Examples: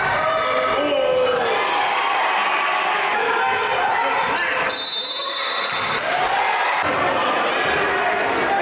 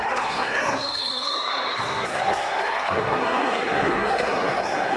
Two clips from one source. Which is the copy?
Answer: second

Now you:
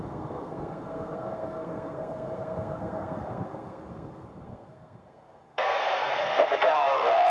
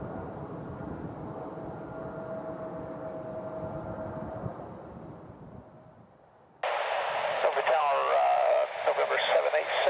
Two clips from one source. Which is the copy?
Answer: first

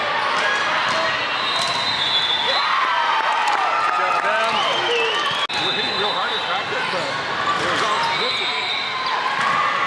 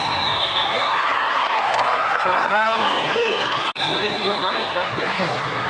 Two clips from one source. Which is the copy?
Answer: second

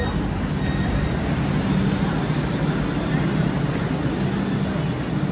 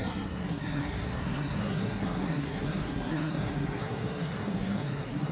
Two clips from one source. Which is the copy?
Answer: second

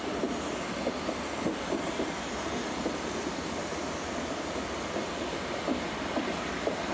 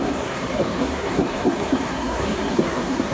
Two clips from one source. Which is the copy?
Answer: second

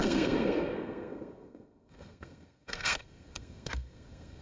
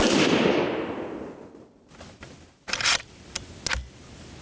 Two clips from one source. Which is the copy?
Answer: first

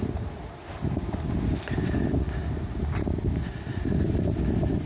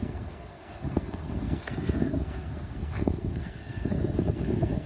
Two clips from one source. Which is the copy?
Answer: second